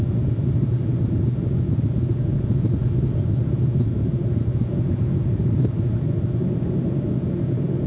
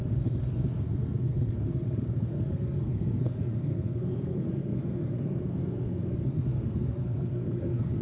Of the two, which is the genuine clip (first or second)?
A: first